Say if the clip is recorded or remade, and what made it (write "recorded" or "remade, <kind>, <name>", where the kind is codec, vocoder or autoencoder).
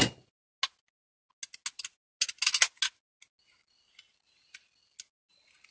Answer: recorded